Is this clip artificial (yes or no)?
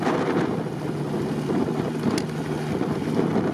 no